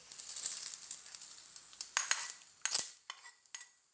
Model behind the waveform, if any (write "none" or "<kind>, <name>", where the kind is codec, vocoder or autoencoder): none